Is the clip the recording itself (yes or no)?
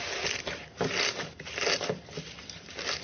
yes